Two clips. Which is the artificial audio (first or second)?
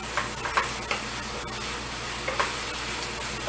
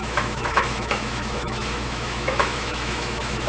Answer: second